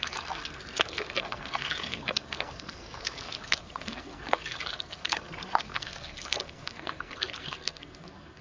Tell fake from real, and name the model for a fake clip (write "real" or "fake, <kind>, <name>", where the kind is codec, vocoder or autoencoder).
fake, codec, SNAC